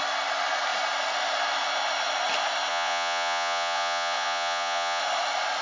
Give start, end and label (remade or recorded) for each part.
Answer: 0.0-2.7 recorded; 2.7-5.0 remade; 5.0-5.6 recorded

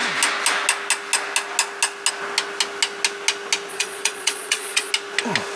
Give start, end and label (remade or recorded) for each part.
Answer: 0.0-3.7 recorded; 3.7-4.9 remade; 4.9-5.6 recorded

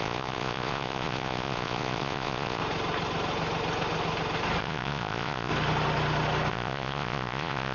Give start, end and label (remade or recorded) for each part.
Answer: 0.0-2.6 remade; 2.6-4.6 recorded; 4.6-5.5 remade; 5.5-6.5 recorded; 6.5-7.7 remade